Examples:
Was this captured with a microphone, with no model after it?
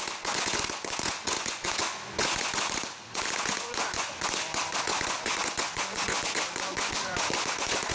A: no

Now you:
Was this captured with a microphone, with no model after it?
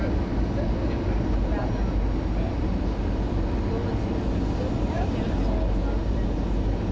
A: yes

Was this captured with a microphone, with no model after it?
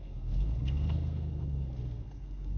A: no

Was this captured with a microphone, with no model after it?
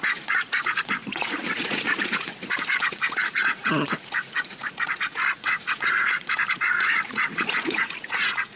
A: no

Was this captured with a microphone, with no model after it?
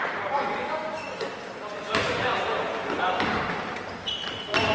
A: yes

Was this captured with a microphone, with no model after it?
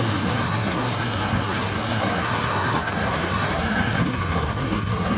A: no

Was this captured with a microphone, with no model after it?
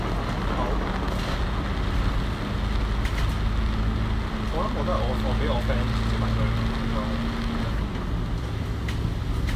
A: yes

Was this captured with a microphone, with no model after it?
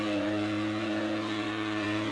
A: no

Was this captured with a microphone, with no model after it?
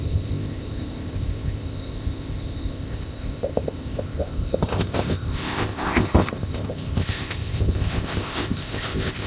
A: no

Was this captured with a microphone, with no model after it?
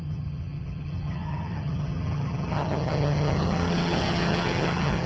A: no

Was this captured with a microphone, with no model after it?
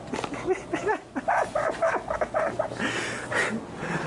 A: yes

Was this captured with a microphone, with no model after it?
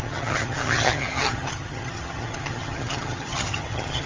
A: no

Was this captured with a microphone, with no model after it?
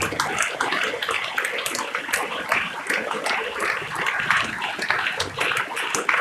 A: yes